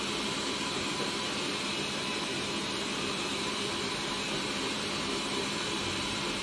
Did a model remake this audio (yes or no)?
yes